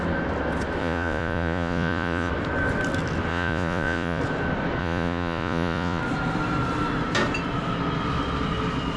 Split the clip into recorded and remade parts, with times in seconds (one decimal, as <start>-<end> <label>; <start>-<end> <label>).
0.0-0.8 recorded; 0.8-2.3 remade; 2.3-3.3 recorded; 3.3-4.2 remade; 4.2-4.8 recorded; 4.8-6.0 remade; 6.0-9.0 recorded

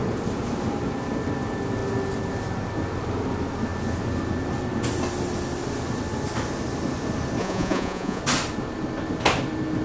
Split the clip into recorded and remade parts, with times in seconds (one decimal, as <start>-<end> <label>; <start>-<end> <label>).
0.0-7.4 recorded; 7.4-8.2 remade; 8.2-9.8 recorded

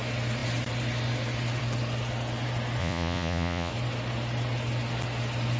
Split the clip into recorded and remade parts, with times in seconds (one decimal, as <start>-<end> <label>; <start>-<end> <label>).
0.0-2.8 recorded; 2.8-3.7 remade; 3.7-5.6 recorded

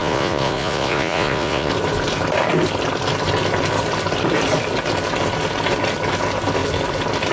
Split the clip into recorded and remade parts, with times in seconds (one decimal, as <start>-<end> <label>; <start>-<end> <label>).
0.0-1.7 remade; 1.7-7.3 recorded

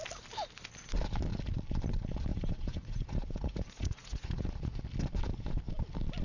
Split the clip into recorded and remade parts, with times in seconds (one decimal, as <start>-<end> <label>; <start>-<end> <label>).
0.0-2.3 recorded; 2.3-4.8 remade; 4.8-6.2 recorded

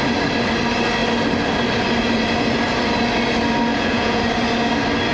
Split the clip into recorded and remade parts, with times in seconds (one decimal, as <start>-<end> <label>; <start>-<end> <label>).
0.0-3.7 recorded; 3.7-4.2 remade; 4.2-5.1 recorded

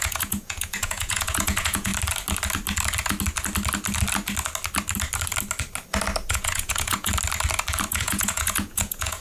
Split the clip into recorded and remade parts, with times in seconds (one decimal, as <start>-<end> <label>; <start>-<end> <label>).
0.0-1.9 remade; 1.9-6.3 recorded; 6.3-7.1 remade; 7.1-7.9 recorded; 7.9-9.2 remade